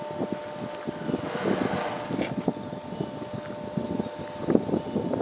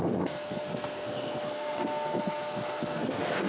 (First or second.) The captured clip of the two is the first